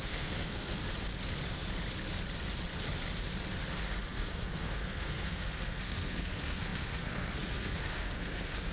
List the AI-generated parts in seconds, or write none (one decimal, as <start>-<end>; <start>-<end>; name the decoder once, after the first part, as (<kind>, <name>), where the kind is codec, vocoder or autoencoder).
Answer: 0.0-0.8 (codec, SNAC); 4.1-8.7